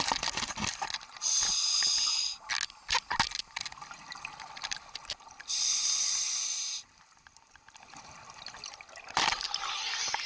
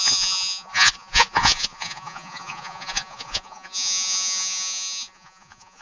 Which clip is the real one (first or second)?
first